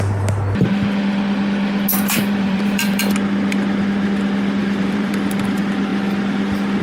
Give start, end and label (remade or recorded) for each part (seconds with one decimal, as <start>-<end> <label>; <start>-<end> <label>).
0.0-1.9 recorded; 1.9-3.0 remade; 3.0-4.6 recorded; 4.6-5.1 remade; 5.1-6.8 recorded